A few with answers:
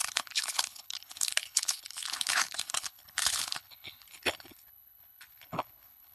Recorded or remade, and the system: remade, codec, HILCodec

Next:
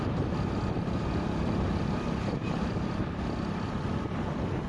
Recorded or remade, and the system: recorded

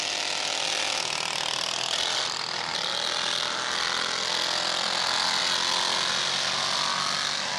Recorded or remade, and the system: recorded